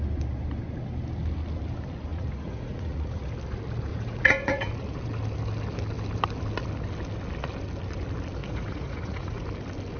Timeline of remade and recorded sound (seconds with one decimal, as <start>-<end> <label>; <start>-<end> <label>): 0.0-2.1 recorded; 2.1-3.3 remade; 3.3-3.9 recorded; 3.9-4.7 remade; 4.7-8.4 recorded; 8.4-9.4 remade; 9.4-10.0 recorded